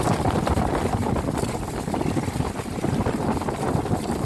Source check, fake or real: fake